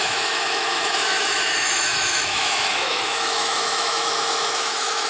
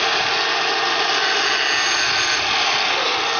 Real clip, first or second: second